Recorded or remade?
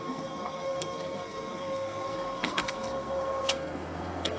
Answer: remade